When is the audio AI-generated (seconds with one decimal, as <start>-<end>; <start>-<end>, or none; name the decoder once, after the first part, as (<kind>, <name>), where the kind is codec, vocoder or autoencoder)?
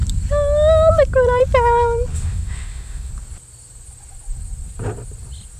2.1-3.1 (autoencoder, DAC-VAE)